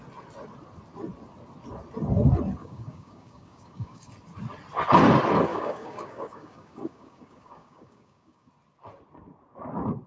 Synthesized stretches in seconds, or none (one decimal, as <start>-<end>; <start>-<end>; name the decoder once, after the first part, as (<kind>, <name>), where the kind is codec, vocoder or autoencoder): 2.6-4.1 (codec, DAC); 5.5-8.5